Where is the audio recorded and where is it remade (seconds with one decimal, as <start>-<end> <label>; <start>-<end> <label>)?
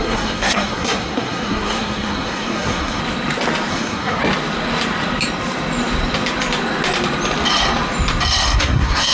0.0-3.0 remade; 3.0-3.7 recorded; 3.7-4.2 remade; 4.2-8.6 recorded; 8.6-9.1 remade